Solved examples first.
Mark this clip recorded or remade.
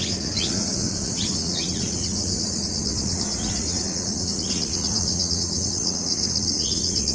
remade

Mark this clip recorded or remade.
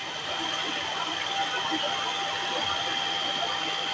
recorded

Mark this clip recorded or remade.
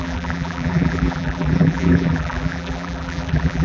remade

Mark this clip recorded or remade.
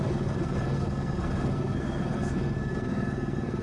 remade